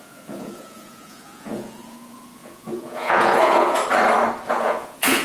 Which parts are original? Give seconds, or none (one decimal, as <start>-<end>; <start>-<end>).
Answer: 3.8-4.5